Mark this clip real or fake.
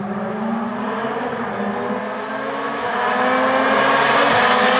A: real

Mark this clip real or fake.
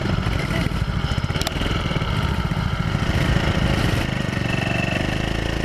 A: fake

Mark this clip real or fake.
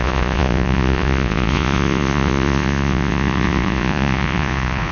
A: fake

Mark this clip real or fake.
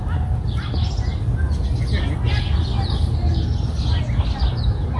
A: real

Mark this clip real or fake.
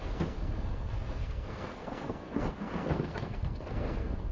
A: fake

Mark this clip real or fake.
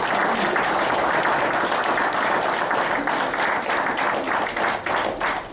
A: real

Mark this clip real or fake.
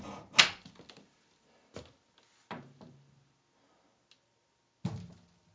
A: real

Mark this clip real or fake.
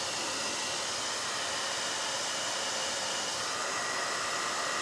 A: real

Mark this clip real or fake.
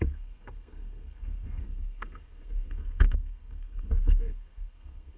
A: fake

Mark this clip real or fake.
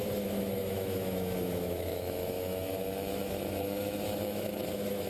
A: fake